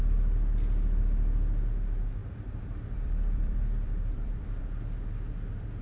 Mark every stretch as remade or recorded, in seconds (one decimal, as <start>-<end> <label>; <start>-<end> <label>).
0.0-2.2 recorded; 2.2-4.6 remade; 4.6-5.8 recorded